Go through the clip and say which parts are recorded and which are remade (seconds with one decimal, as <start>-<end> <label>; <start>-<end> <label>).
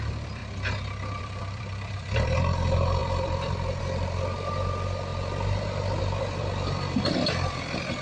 0.0-0.4 remade; 0.4-1.2 recorded; 1.2-5.1 remade; 5.1-6.0 recorded; 6.0-8.0 remade